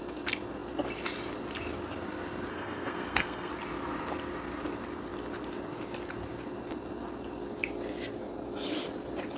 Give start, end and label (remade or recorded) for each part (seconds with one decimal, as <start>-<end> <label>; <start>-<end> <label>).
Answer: 0.0-2.5 recorded; 2.5-3.5 remade; 3.5-9.4 recorded